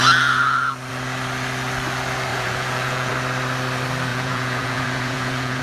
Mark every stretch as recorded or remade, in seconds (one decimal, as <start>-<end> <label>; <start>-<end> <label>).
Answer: 0.0-2.3 recorded; 2.3-3.1 remade; 3.1-4.1 recorded; 4.1-5.6 remade

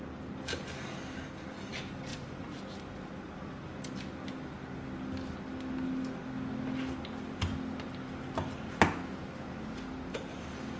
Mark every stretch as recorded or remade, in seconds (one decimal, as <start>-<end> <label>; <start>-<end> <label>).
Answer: 0.0-2.1 recorded; 2.1-2.6 remade; 2.6-10.8 recorded

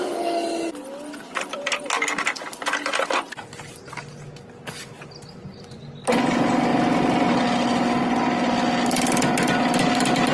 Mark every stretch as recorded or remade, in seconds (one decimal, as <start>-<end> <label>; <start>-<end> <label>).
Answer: 0.0-10.3 recorded

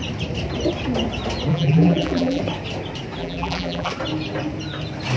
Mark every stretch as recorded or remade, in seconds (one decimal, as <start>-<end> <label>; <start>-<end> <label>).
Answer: 0.0-1.5 recorded; 1.5-2.4 remade; 2.4-3.2 recorded; 3.2-3.9 remade; 3.9-5.2 recorded

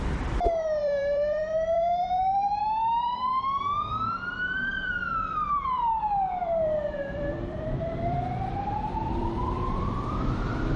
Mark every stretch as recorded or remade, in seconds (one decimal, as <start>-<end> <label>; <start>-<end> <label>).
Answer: 0.0-10.8 remade

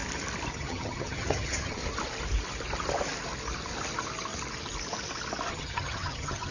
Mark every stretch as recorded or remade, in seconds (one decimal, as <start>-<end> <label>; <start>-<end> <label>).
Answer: 0.0-0.5 recorded; 0.5-1.8 remade; 1.8-5.5 recorded; 5.5-6.5 remade

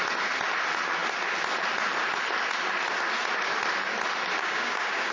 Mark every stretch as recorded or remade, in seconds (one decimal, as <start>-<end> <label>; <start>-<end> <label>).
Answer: 0.0-4.4 recorded; 4.4-5.1 remade